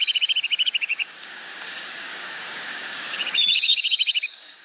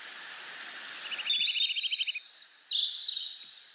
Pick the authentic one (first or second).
second